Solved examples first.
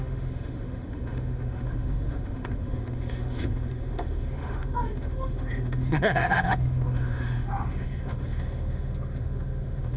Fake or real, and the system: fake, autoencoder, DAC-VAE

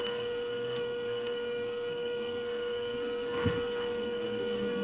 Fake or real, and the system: fake, codec, SNAC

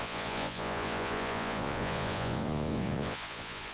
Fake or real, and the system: fake, vocoder, Vocos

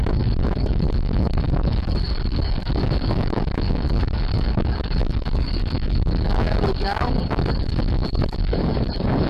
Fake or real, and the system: fake, codec, DAC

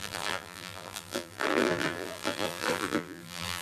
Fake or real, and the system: fake, vocoder, BigVGAN v2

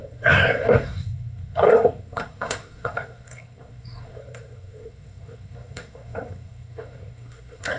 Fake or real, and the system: fake, codec, SNAC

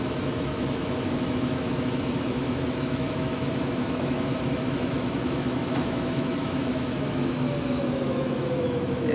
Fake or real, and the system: fake, autoencoder, DAC-VAE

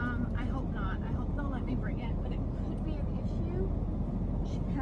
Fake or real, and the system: real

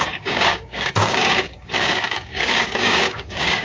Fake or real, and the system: fake, codec, DAC